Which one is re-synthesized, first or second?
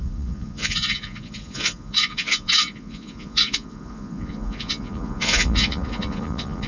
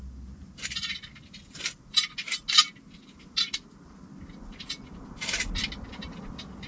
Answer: first